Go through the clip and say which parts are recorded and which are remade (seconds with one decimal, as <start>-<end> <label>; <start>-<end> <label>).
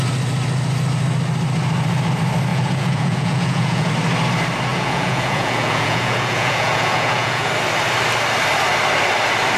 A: 0.0-2.5 recorded; 2.5-3.9 remade; 3.9-4.7 recorded; 4.7-7.5 remade; 7.5-9.6 recorded